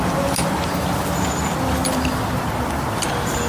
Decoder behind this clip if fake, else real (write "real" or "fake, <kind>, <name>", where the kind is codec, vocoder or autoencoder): real